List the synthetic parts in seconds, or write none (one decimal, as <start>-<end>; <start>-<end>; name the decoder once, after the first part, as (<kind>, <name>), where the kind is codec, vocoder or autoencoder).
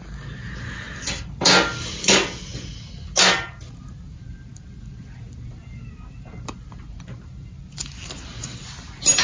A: none